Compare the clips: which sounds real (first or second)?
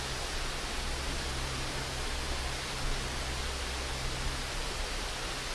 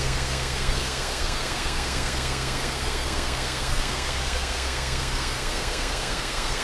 first